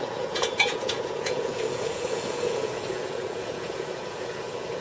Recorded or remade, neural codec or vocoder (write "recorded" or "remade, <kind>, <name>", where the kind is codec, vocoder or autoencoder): remade, vocoder, Vocos